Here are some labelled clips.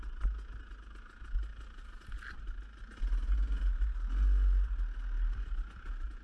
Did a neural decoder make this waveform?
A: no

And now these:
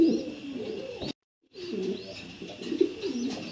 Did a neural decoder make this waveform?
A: no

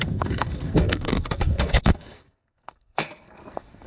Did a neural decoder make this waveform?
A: yes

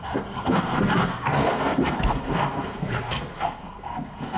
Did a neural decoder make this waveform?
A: yes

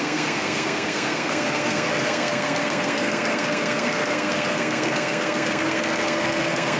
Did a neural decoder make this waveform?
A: yes